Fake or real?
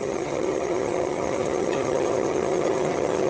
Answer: fake